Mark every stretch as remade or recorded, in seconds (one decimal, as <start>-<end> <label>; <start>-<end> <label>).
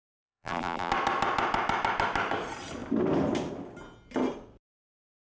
0.0-0.9 remade; 0.9-5.2 recorded